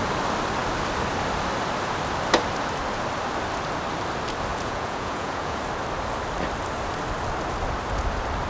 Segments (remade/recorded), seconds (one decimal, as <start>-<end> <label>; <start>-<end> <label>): 0.0-4.5 recorded; 4.5-5.6 remade; 5.6-8.5 recorded